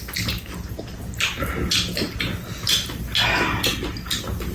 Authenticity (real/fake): real